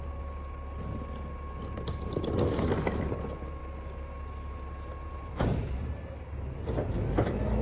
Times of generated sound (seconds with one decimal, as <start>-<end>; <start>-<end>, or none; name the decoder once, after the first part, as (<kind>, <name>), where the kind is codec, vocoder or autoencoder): none